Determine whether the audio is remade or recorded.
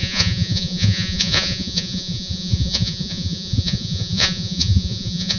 remade